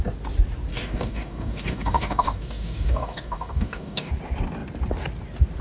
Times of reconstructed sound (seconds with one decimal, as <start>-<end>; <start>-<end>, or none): 0.7-4.1